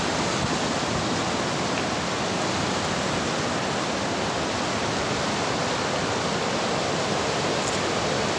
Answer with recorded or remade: recorded